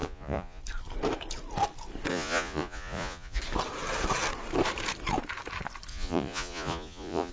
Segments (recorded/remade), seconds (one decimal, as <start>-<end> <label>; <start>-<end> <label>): 0.0-0.6 remade; 0.6-2.1 recorded; 2.1-3.4 remade; 3.4-5.9 recorded; 5.9-7.3 remade